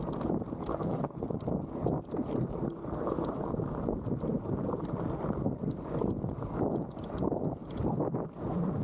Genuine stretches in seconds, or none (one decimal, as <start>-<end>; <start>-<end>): 0.0-0.7; 1.4-2.8; 3.4-8.8